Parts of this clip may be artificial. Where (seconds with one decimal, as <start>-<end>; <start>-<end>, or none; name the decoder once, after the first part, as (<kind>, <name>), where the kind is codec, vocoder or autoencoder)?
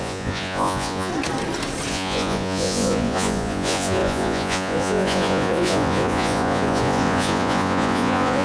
0.0-1.1 (vocoder, Vocos); 1.9-8.4